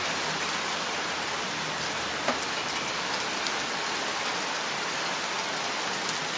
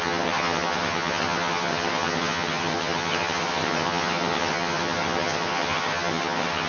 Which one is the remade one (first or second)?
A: second